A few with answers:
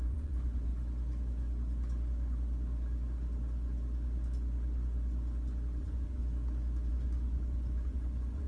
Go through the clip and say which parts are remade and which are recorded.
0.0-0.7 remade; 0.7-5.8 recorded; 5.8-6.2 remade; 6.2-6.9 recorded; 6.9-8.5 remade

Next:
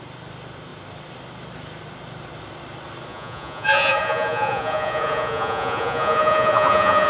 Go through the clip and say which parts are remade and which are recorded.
0.0-3.1 recorded; 3.1-7.1 remade

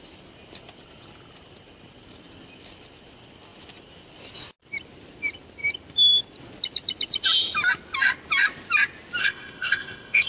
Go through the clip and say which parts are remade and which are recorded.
0.0-9.2 recorded; 9.2-10.3 remade

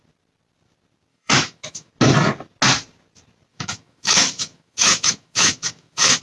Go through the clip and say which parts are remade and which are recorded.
0.0-1.1 recorded; 1.1-1.9 remade; 1.9-3.5 recorded; 3.5-6.2 remade